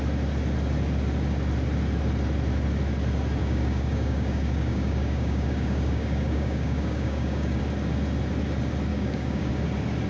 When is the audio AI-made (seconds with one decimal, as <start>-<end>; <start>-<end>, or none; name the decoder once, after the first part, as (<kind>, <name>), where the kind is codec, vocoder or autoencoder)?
3.4-7.6 (codec, DAC); 8.9-9.5